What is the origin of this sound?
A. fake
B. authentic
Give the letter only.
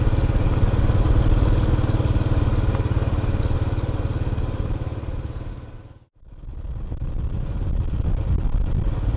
B